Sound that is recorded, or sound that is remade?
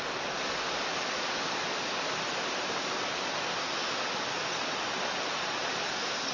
recorded